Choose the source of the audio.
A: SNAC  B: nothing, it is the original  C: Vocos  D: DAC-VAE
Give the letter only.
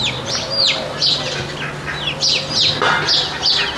B